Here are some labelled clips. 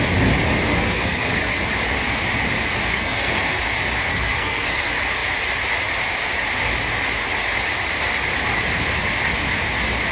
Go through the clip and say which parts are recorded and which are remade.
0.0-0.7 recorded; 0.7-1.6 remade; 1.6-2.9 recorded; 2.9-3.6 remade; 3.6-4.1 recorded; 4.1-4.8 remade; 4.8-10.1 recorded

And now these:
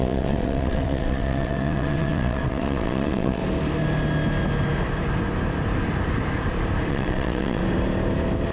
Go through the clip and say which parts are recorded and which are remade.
0.0-3.4 remade; 3.4-6.9 recorded; 6.9-7.6 remade; 7.6-8.5 recorded

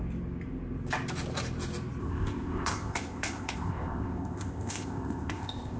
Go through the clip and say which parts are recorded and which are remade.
0.0-2.0 recorded; 2.0-5.8 remade